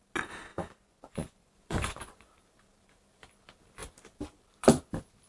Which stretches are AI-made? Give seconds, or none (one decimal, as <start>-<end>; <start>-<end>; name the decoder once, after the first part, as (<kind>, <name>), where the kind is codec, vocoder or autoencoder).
0.5-2.3 (vocoder, Vocos)